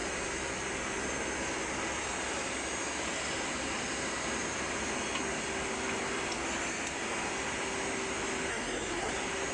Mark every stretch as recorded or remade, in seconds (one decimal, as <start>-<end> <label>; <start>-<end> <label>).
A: 0.0-8.5 recorded; 8.5-9.1 remade; 9.1-9.5 recorded